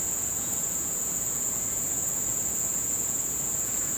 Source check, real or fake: fake